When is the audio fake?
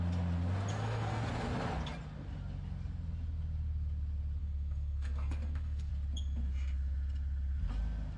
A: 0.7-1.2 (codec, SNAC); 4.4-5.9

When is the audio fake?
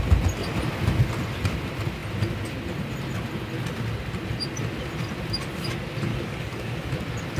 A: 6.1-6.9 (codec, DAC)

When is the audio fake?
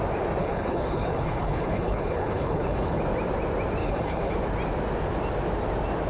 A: 0.4-3.0 (codec, HILCodec); 3.8-4.3